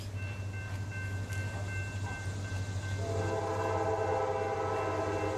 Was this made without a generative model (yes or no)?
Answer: yes